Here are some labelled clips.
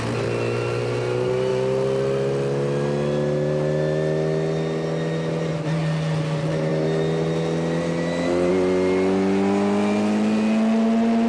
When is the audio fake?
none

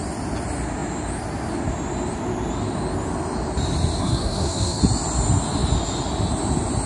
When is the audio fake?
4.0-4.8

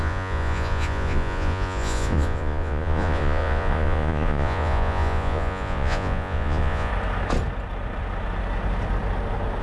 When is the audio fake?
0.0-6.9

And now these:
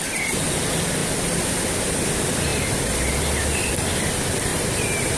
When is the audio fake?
4.5-5.2

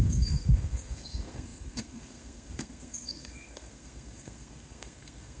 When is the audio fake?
0.0-5.4

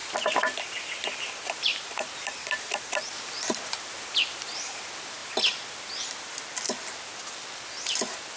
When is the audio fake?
0.0-4.8; 5.2-6.4

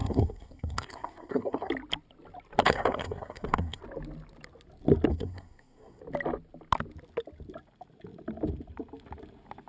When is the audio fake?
0.0-1.7; 2.6-3.8; 5.1-6.0

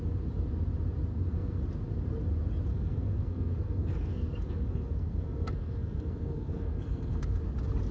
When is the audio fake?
1.1-1.6; 2.7-7.4